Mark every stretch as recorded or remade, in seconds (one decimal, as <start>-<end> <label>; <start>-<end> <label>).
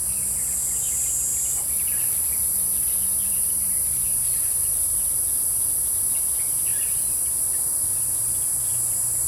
0.0-1.3 recorded; 1.3-2.9 remade; 2.9-6.7 recorded; 6.7-8.2 remade; 8.2-9.3 recorded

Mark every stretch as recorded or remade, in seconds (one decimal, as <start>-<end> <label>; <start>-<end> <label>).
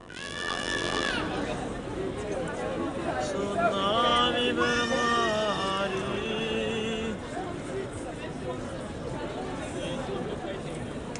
0.0-1.1 remade; 1.1-11.2 recorded